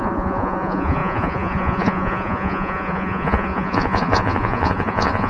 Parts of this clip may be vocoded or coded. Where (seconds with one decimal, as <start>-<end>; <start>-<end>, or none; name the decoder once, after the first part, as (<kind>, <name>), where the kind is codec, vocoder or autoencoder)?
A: 0.0-5.3 (vocoder, Vocos)